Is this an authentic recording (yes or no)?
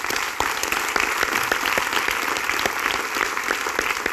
yes